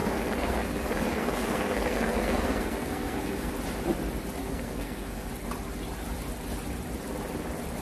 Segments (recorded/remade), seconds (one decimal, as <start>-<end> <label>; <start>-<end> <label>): 0.0-3.5 remade; 3.5-4.4 recorded; 4.4-5.3 remade; 5.3-7.8 recorded